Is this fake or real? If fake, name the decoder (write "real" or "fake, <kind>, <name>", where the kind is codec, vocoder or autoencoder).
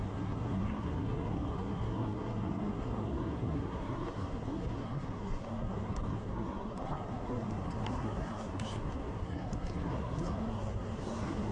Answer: fake, codec, SNAC